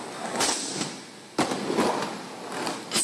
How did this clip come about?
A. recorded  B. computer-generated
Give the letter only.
A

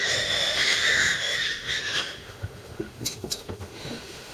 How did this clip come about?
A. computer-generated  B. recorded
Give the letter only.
A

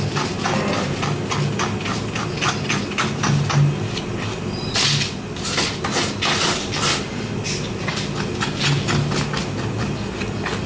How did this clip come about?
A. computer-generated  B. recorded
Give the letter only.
B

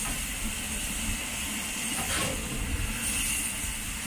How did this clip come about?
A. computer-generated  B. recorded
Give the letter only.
B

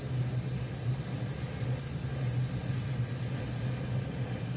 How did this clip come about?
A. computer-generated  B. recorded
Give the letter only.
B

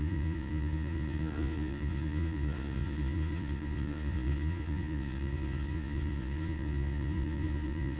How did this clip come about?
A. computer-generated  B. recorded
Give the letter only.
A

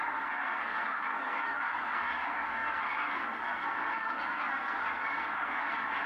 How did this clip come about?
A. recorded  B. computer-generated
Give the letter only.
B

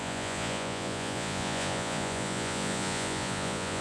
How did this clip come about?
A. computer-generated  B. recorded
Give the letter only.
A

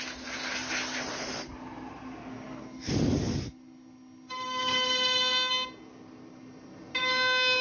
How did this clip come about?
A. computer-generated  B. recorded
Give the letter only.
B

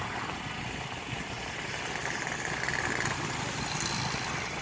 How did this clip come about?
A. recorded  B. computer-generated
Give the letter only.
A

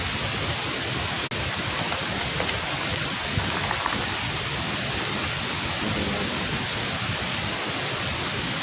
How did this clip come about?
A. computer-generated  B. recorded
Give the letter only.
B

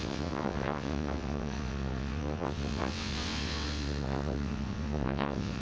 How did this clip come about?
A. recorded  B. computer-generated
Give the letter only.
B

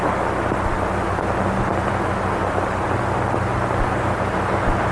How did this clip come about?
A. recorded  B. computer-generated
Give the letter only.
A